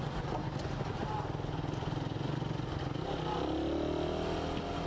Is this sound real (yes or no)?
yes